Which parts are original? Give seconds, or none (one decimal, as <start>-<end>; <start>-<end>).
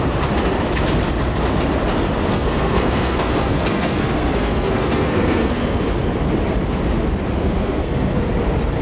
0.0-2.3; 5.8-7.6; 8.2-8.8